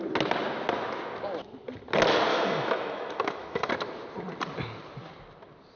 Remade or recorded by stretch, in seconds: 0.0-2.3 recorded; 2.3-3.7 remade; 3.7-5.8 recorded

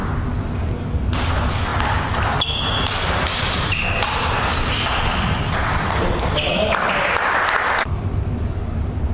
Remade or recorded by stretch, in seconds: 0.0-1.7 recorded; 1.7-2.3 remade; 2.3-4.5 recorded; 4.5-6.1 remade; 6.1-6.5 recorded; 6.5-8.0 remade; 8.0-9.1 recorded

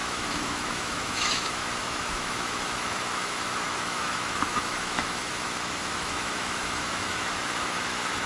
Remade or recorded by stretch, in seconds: 0.0-8.3 remade

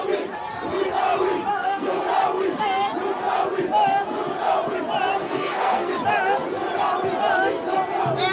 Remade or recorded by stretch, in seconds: 0.0-1.5 recorded; 1.5-2.0 remade; 2.0-5.2 recorded; 5.2-5.9 remade; 5.9-8.3 recorded

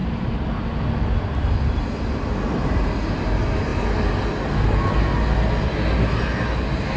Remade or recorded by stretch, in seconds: 0.0-7.0 recorded

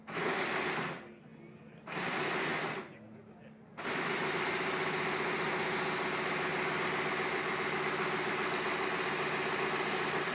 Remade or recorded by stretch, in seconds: 0.0-10.3 recorded